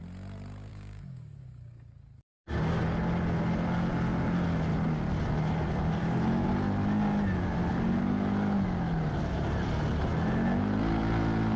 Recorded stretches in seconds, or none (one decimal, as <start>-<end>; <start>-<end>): 0.0-0.7; 2.8-6.0; 6.5-11.6